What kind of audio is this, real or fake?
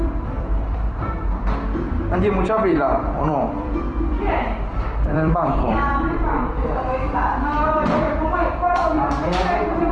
fake